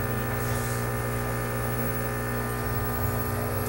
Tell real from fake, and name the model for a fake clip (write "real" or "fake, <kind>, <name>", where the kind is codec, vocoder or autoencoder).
real